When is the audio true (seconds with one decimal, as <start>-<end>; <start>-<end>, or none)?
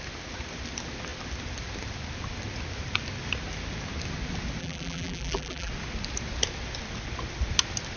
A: 0.0-4.6; 5.7-8.0